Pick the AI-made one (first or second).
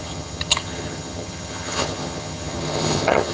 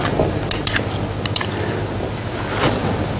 first